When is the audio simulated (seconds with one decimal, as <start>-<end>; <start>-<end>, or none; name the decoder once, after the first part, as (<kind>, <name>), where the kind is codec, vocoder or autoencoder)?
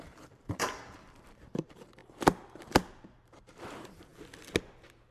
0.0-2.0 (vocoder, BigVGAN v2); 2.9-4.1